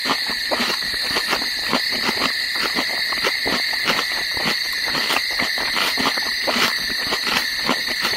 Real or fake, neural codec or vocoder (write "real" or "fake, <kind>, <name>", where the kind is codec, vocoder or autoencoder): real